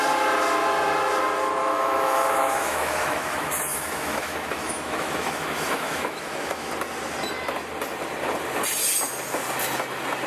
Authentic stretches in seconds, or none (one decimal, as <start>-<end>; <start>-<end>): 0.0-1.6; 6.7-10.3